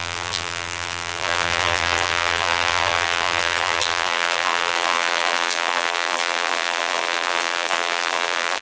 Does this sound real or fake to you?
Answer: fake